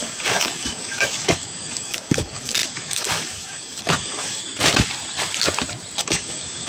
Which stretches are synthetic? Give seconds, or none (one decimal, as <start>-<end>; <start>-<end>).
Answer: 0.0-4.4; 6.0-6.7